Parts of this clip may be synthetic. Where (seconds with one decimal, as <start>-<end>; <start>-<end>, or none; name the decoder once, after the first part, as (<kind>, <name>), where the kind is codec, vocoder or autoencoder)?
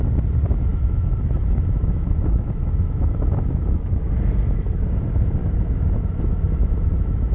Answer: 0.7-4.0 (autoencoder, DAC-VAE); 5.4-7.3